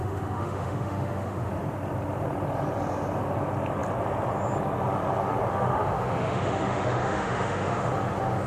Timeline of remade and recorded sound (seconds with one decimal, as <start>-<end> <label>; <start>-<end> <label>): 0.0-1.5 remade; 1.5-5.5 recorded; 5.5-7.9 remade; 7.9-8.5 recorded